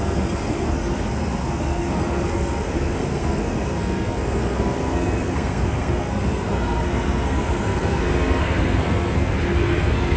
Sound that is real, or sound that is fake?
fake